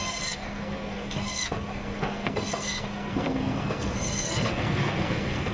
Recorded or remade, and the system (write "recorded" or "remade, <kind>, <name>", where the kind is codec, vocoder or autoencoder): remade, codec, SNAC